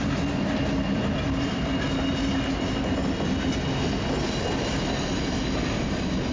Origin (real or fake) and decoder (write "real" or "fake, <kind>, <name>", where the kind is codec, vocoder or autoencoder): real